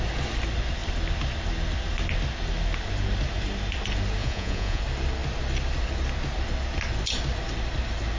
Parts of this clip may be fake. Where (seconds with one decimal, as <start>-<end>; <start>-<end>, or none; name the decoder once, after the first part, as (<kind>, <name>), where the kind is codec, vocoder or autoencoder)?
4.2-4.8 (vocoder, Vocos)